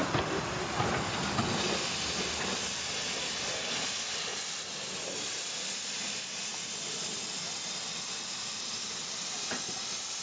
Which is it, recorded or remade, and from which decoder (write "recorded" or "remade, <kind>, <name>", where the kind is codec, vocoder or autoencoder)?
recorded